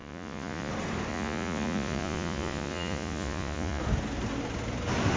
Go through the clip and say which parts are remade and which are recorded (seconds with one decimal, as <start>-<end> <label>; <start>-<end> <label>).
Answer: 0.0-0.7 remade; 0.7-1.1 recorded; 1.1-3.8 remade; 3.8-5.2 recorded